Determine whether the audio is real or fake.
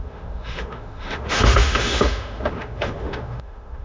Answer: fake